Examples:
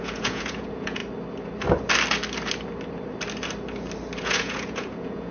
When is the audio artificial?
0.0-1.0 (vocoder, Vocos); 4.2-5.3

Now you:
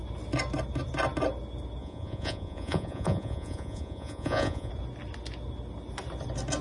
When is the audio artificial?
1.8-4.7 (vocoder, Vocos)

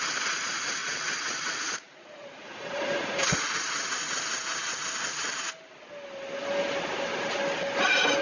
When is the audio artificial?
0.8-3.4 (vocoder, Vocos)

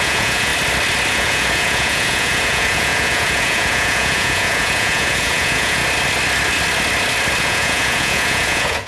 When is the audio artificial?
0.0-0.5 (vocoder, Vocos); 1.1-5.8; 7.4-8.9

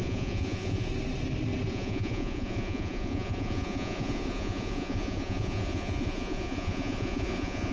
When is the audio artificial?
0.0-0.9 (vocoder, Vocos); 1.7-7.7

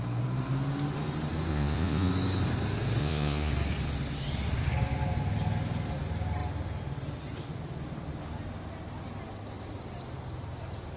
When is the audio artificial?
1.5-2.1 (vocoder, Vocos); 3.0-3.5

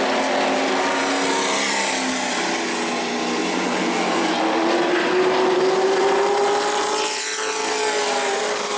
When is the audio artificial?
3.4-4.4 (vocoder, Vocos)

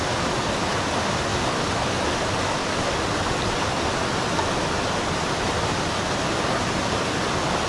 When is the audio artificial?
none